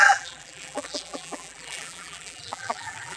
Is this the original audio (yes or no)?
no